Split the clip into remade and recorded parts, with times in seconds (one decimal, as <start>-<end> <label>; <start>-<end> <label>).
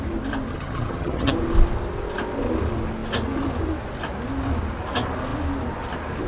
0.0-0.5 recorded; 0.5-1.3 remade; 1.3-6.3 recorded